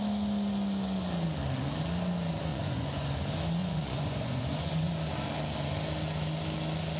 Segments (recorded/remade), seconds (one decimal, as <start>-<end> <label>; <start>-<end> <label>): 0.0-2.5 recorded; 2.5-3.2 remade; 3.2-3.6 recorded; 3.6-4.9 remade; 4.9-7.0 recorded